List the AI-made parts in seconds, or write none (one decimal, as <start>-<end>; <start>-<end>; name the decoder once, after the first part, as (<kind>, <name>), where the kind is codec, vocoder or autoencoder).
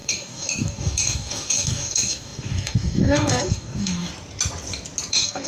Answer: 0.0-4.1 (codec, DAC); 5.1-5.5